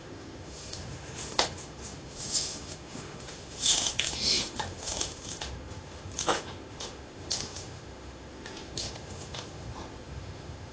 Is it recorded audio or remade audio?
remade